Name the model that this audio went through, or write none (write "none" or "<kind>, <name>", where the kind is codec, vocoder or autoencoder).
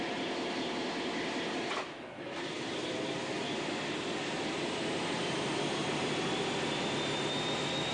none